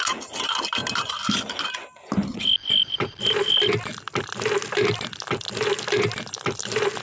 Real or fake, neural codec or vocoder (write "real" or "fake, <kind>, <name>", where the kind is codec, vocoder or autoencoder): real